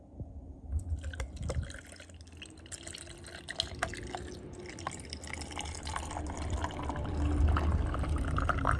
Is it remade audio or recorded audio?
recorded